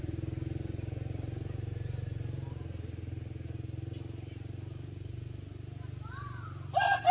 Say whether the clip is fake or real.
real